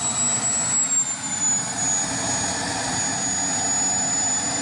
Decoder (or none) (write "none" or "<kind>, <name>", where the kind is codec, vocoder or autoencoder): none